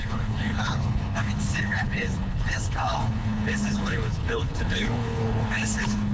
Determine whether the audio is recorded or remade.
remade